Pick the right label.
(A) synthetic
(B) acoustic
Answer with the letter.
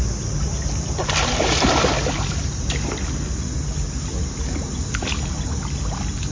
B